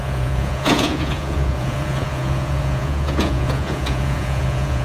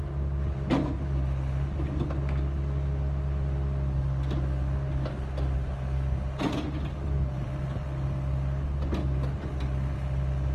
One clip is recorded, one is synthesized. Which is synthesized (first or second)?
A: first